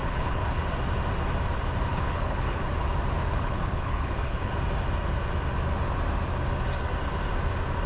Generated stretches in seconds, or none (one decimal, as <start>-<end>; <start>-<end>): 0.0-0.6; 1.9-2.6; 3.3-4.5